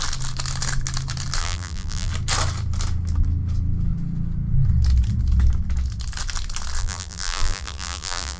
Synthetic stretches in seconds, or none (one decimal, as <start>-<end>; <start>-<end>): 1.4-2.1; 6.8-8.4